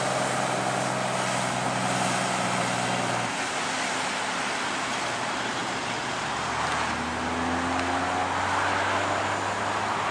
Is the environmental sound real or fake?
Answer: real